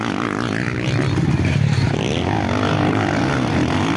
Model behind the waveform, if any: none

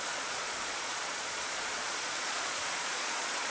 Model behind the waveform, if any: vocoder, Vocos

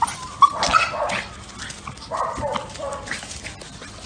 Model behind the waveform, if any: none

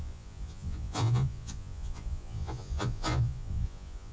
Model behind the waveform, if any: vocoder, Vocos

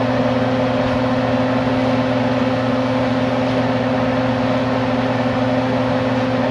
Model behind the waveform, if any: none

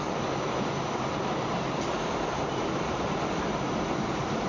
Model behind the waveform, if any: none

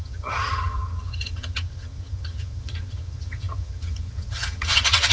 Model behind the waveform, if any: vocoder, HiFi-GAN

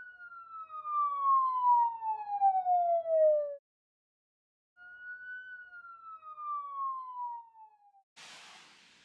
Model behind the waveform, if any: none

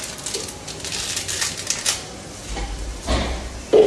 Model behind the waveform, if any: none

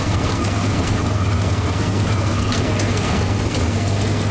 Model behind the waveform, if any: codec, SNAC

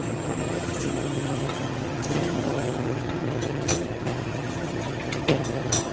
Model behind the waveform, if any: vocoder, HiFi-GAN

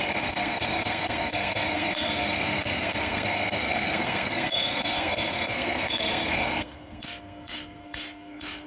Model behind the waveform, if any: codec, SNAC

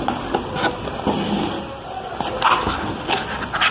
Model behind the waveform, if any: none